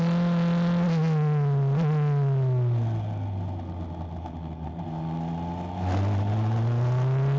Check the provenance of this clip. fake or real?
real